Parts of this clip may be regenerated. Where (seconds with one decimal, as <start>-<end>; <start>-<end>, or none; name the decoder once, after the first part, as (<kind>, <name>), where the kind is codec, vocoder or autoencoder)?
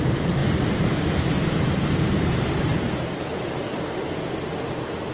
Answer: 0.0-3.7 (vocoder, BigVGAN v2)